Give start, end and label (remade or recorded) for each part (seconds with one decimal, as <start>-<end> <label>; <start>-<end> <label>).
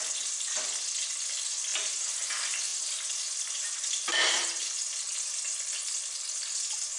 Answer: 0.0-7.0 recorded